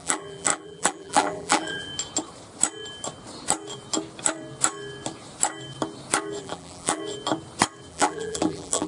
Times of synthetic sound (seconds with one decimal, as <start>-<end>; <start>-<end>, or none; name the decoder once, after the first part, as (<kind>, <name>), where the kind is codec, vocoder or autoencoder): 0.0-1.9 (vocoder, BigVGAN v2); 6.4-7.0; 7.9-8.9